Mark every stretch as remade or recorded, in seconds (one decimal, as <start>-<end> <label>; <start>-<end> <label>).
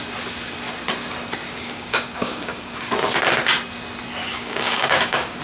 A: 0.0-1.4 recorded; 1.4-2.9 remade; 2.9-4.2 recorded; 4.2-5.4 remade